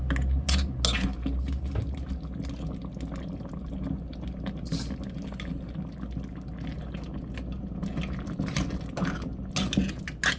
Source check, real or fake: real